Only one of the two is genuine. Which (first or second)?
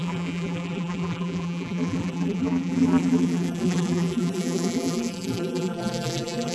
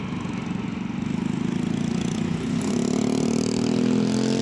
second